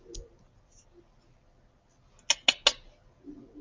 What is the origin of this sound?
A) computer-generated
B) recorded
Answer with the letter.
B